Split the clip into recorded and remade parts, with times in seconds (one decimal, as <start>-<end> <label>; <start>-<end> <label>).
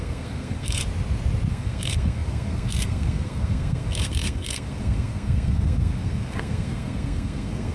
0.0-0.8 remade; 0.8-1.5 recorded; 1.5-7.7 remade